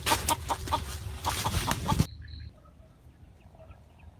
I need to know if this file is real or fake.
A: real